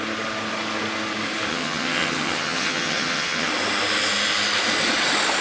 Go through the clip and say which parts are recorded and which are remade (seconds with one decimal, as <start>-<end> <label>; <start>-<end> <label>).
0.0-1.5 recorded; 1.5-3.5 remade; 3.5-5.4 recorded